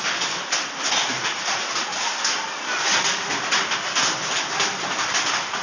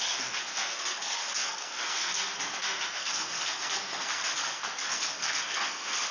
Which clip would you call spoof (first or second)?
second